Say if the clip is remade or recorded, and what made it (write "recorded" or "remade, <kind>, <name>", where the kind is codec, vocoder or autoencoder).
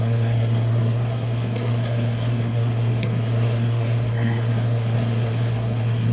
remade, codec, SNAC